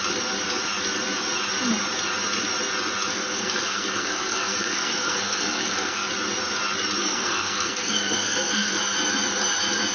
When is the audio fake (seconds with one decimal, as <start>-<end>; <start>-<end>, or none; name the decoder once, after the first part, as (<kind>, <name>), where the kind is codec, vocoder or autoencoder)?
3.1-6.1 (codec, SNAC); 7.0-8.8